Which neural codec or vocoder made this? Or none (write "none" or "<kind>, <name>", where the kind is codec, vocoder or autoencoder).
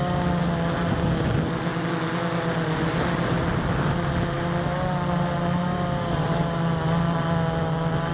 none